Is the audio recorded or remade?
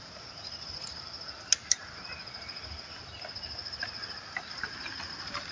recorded